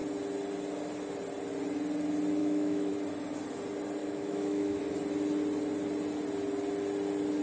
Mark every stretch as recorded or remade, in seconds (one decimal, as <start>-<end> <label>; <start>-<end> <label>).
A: 0.0-2.4 recorded; 2.4-2.9 remade; 2.9-4.0 recorded; 4.0-4.8 remade; 4.8-7.4 recorded